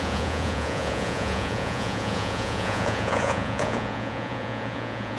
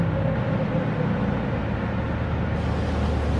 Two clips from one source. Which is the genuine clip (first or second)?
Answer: second